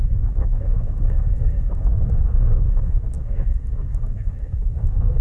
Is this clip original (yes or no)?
no